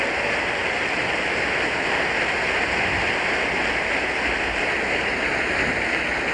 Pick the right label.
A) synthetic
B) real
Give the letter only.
B